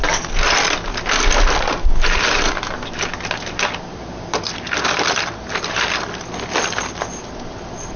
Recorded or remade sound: recorded